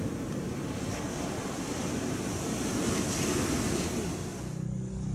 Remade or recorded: recorded